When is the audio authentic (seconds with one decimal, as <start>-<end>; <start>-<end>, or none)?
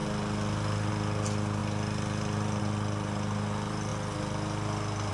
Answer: 0.0-5.1